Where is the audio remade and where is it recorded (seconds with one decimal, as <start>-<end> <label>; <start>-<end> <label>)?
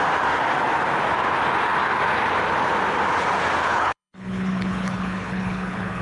0.0-3.6 recorded; 3.6-6.0 remade